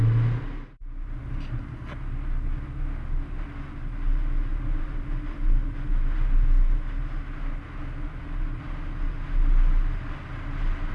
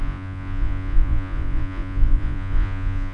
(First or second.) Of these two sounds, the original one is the first